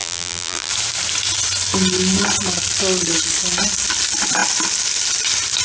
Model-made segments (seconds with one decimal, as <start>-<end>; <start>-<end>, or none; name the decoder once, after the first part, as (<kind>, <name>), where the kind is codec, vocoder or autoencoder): 0.0-0.7 (vocoder, BigVGAN v2)